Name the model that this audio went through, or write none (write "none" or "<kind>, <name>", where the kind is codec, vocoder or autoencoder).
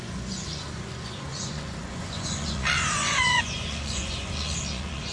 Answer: vocoder, Vocos